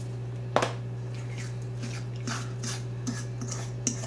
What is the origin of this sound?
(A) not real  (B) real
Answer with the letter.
B